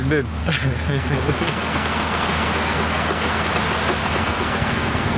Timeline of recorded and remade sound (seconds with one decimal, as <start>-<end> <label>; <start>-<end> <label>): 0.0-0.4 recorded; 0.4-3.5 remade; 3.5-4.0 recorded; 4.0-5.2 remade